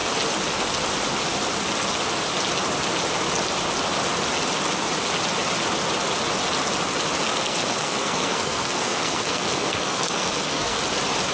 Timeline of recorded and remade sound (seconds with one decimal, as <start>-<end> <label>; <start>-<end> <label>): 0.0-7.3 recorded; 7.3-10.8 remade; 10.8-11.3 recorded